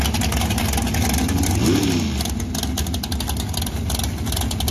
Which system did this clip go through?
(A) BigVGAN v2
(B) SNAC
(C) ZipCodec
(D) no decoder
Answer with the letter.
D